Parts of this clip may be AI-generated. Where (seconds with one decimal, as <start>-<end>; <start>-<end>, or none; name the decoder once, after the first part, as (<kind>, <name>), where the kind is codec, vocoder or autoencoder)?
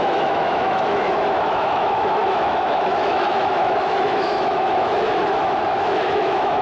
0.0-6.6 (autoencoder, DAC-VAE)